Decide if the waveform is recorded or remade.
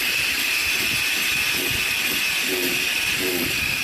remade